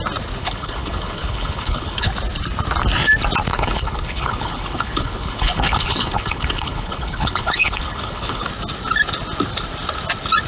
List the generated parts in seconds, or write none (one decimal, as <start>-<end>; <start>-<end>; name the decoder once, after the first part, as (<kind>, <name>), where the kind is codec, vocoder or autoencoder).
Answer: 0.4-2.1 (codec, HILCodec); 3.5-8.5